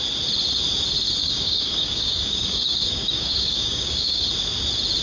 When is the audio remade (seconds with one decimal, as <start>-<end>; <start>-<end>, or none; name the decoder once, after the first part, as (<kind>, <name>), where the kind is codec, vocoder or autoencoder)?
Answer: 1.2-4.2 (codec, DAC)